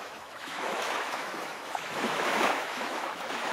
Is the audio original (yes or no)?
no